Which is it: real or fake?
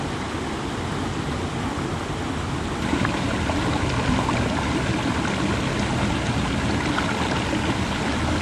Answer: real